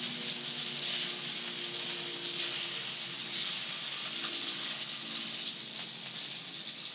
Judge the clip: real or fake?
real